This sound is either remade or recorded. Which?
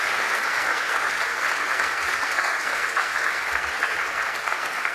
remade